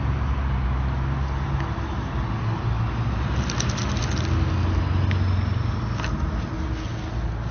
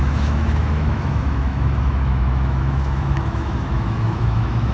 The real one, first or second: first